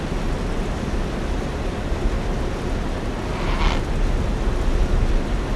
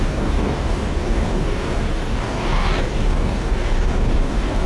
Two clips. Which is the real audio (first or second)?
first